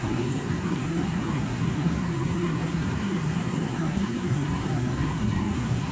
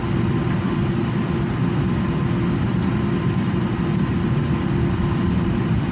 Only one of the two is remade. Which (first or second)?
first